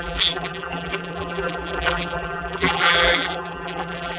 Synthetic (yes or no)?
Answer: yes